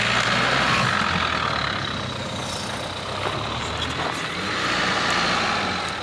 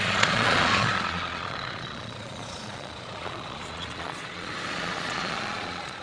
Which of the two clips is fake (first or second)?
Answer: second